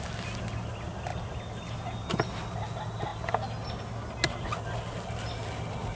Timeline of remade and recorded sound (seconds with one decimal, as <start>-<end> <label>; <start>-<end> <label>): 0.0-6.0 recorded